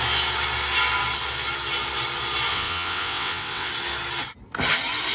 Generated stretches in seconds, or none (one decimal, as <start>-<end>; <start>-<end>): 2.5-3.7